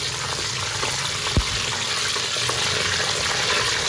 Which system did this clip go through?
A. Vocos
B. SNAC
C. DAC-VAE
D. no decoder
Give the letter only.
D